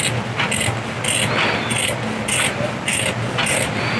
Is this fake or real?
real